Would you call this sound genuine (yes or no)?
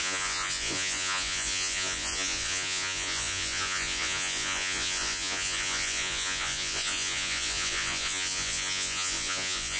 no